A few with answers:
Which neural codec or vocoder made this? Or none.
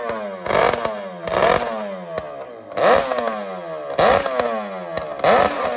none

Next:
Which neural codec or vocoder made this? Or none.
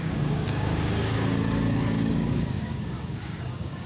codec, DAC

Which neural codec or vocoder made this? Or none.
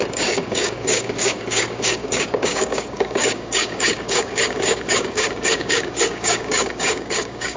codec, DAC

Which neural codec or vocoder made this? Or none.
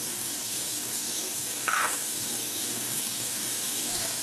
codec, DAC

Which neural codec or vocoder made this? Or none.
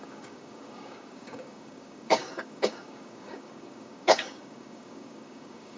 codec, DAC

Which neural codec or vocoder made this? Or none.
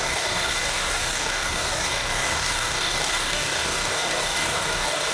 codec, DAC